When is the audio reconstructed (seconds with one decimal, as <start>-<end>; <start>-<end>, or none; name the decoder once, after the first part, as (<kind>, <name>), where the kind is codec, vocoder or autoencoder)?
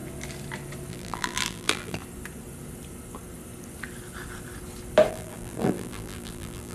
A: 0.9-2.0 (vocoder, BigVGAN v2); 5.1-6.7